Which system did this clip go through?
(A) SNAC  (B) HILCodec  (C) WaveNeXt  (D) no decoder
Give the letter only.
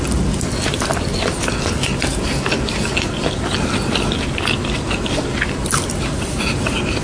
D